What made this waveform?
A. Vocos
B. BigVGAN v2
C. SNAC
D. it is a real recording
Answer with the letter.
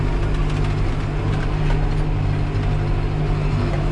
D